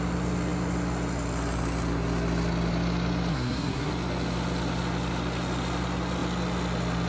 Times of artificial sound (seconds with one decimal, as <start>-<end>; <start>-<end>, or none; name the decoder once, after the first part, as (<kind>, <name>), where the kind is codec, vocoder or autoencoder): 3.3-3.9 (codec, SNAC)